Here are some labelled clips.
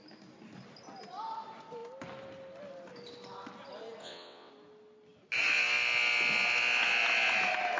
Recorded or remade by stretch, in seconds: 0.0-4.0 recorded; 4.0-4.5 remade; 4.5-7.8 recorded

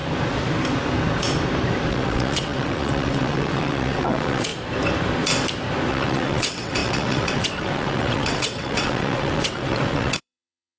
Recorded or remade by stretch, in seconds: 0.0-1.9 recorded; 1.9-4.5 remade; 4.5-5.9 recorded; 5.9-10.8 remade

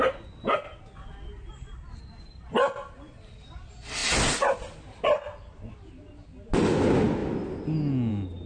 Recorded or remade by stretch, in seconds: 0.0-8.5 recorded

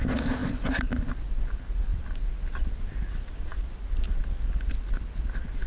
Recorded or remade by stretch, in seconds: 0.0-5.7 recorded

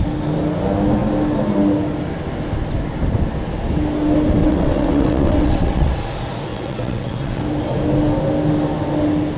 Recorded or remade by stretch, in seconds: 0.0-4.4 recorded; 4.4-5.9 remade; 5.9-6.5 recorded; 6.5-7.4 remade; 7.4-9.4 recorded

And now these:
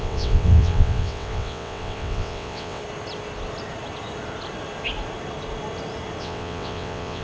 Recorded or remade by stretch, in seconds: 0.0-2.8 remade; 2.8-6.2 recorded; 6.2-7.2 remade

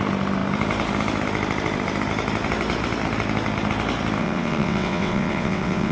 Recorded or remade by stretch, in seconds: 0.0-4.2 recorded; 4.2-5.9 remade

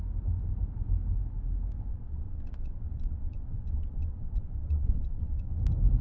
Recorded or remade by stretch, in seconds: 0.0-1.9 recorded; 1.9-5.5 remade; 5.5-6.0 recorded